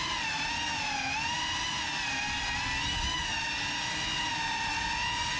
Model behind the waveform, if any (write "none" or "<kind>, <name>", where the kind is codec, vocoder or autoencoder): none